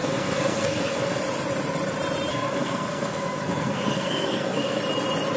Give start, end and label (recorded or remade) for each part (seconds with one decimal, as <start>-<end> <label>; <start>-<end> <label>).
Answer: 0.0-1.2 remade; 1.2-2.3 recorded; 2.3-4.8 remade; 4.8-5.4 recorded